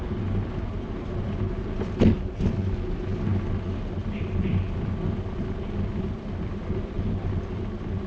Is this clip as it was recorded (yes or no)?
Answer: yes